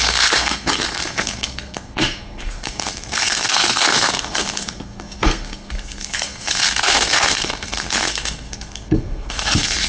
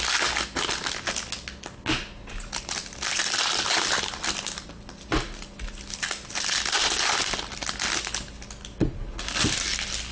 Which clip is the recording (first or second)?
second